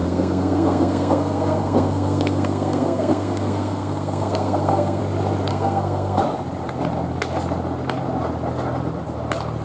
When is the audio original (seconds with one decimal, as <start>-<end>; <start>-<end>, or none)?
5.0-5.5; 6.2-9.6